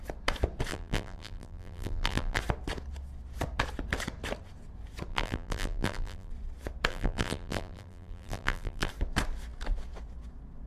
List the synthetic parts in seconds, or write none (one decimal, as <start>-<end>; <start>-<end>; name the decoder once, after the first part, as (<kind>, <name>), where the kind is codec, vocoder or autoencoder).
0.7-2.4 (vocoder, BigVGAN v2); 5.1-6.3; 6.9-8.9